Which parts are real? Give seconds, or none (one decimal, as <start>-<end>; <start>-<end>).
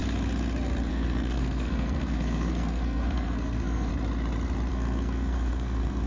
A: 0.0-0.9; 3.9-4.7